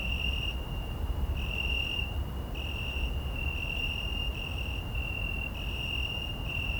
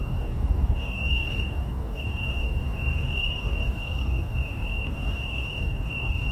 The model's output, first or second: second